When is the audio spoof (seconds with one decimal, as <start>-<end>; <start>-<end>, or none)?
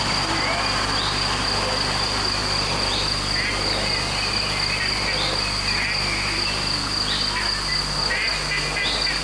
none